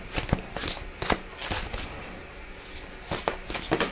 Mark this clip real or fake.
real